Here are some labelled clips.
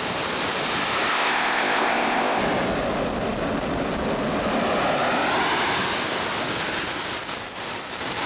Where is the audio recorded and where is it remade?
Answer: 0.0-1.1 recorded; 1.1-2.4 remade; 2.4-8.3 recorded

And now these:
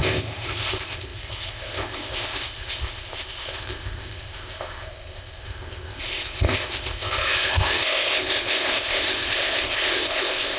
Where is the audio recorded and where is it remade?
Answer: 0.0-10.6 remade

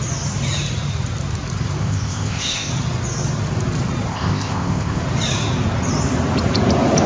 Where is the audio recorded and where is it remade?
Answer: 0.0-1.8 recorded; 1.8-2.7 remade; 2.7-4.1 recorded; 4.1-5.0 remade; 5.0-7.1 recorded

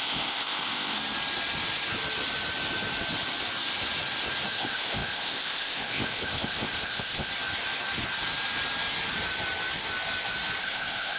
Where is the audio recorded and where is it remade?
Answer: 0.0-1.0 remade; 1.0-4.5 recorded; 4.5-7.3 remade; 7.3-10.6 recorded; 10.6-11.2 remade

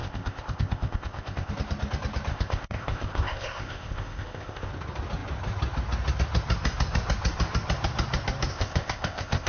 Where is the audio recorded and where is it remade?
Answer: 0.0-1.5 remade; 1.5-2.3 recorded; 2.3-4.7 remade; 4.7-8.5 recorded; 8.5-9.5 remade

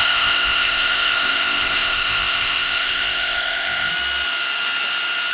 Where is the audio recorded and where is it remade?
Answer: 0.0-3.9 remade; 3.9-5.3 recorded